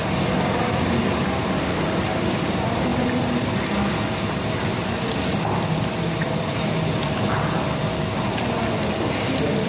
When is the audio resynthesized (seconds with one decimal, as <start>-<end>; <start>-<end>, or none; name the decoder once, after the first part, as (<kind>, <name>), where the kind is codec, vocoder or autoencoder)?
0.0-1.1 (vocoder, BigVGAN v2)